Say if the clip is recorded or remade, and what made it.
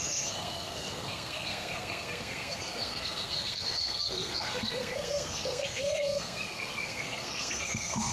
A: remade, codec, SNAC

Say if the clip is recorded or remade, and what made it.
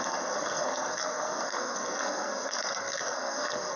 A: remade, codec, SNAC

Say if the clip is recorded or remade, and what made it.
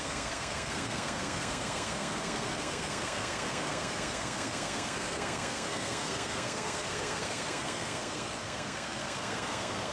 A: remade, codec, SNAC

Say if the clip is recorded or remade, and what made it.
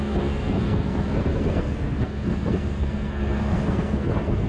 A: remade, codec, SNAC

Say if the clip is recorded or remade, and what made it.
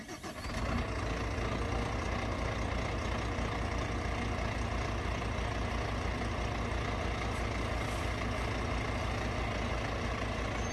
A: recorded